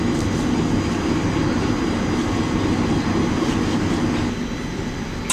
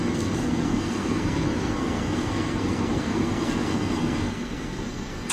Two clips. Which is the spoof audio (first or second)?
second